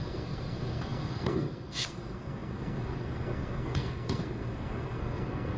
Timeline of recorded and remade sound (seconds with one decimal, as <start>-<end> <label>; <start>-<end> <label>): 0.0-5.6 remade